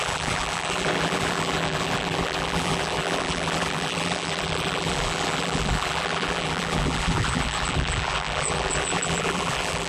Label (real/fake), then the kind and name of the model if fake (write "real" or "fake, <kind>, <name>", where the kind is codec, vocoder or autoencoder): fake, vocoder, BigVGAN v2